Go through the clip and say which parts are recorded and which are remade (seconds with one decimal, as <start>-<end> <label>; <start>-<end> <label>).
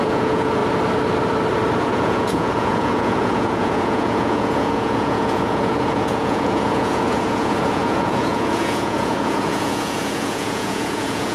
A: 0.0-0.6 remade; 0.6-1.8 recorded; 1.8-11.3 remade